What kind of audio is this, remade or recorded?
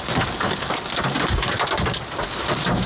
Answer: recorded